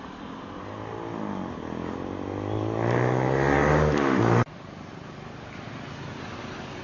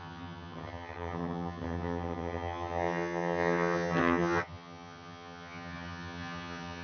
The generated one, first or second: second